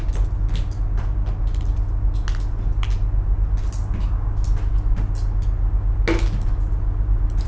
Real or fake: real